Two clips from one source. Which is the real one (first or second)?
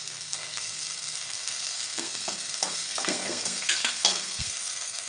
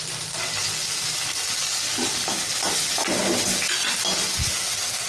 second